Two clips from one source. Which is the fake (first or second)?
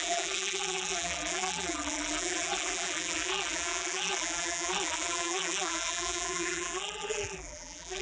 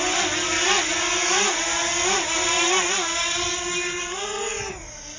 first